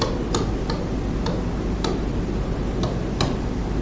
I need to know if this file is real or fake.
real